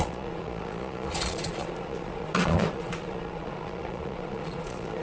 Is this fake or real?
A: fake